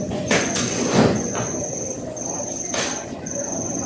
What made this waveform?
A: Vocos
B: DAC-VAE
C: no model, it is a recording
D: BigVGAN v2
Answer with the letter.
A